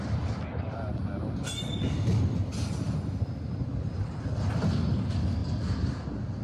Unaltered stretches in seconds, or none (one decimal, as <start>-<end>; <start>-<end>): 0.0-6.4